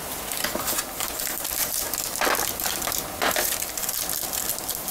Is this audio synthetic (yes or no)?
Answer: no